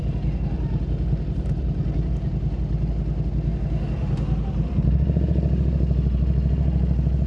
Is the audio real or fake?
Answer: real